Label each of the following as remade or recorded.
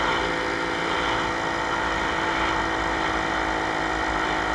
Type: recorded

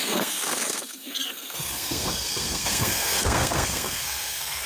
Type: remade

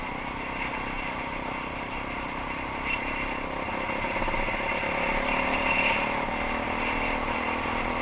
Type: recorded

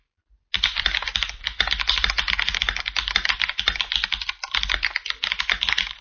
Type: recorded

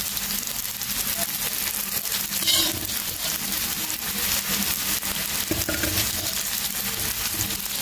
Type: recorded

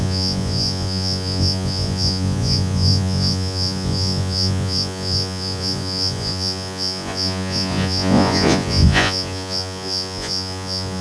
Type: remade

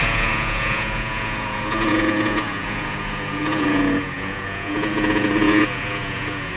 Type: remade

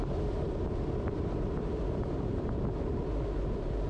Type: recorded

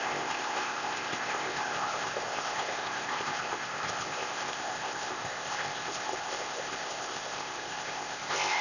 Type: remade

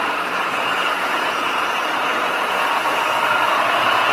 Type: remade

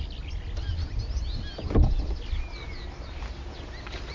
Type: recorded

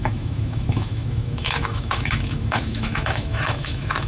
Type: remade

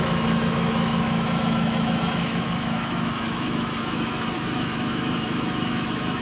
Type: remade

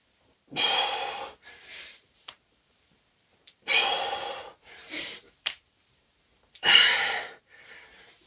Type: remade